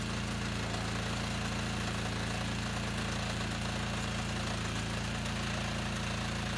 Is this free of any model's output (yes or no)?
yes